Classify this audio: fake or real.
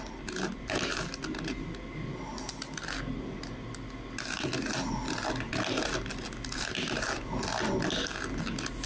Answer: real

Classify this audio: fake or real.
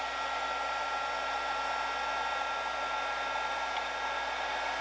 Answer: real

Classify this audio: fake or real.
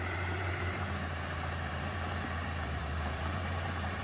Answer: fake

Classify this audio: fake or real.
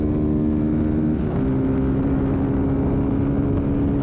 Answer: real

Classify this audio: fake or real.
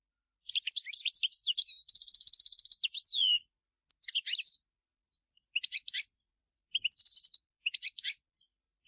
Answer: real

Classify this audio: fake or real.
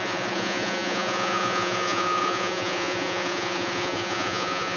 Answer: fake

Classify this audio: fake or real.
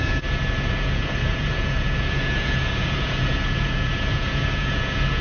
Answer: fake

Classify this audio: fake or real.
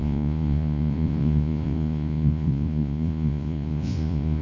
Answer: fake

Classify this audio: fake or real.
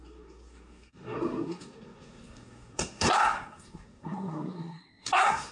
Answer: fake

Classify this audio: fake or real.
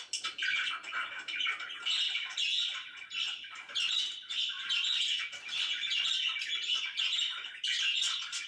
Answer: real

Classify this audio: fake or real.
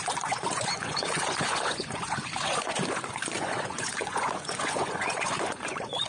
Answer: fake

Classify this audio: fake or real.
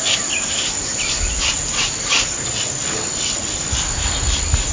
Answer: real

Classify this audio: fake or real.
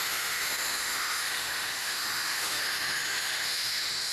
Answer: fake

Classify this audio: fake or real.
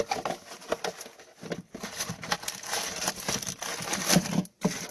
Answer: real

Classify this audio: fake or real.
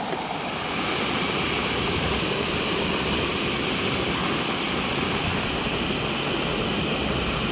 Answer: real